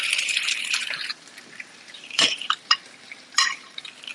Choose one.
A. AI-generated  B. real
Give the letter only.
A